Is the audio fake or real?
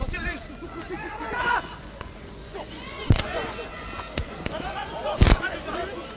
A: fake